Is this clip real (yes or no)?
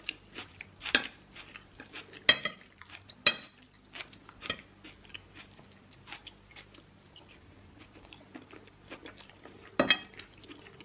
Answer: yes